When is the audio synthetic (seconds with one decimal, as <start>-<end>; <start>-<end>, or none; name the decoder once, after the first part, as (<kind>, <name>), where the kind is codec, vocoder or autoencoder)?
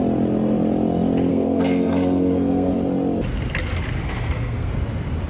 1.3-2.7 (codec, SNAC); 4.0-4.7